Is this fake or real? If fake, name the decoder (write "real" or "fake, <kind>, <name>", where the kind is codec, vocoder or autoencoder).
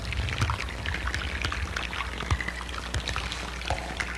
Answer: real